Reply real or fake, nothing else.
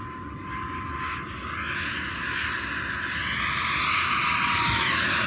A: real